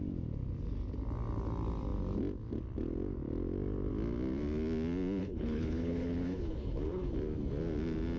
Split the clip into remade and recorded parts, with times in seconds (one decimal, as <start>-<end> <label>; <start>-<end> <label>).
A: 0.0-5.2 recorded; 5.2-7.1 remade; 7.1-8.2 recorded